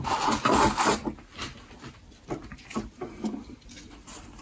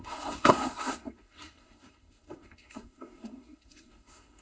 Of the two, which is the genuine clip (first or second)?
first